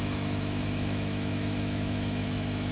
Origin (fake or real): fake